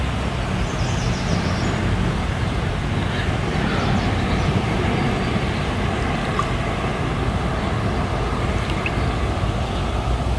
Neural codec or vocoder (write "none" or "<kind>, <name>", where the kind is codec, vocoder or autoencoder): none